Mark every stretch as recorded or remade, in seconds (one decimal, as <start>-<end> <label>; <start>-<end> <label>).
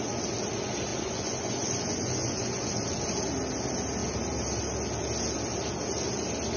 0.0-0.9 recorded; 0.9-2.7 remade; 2.7-6.6 recorded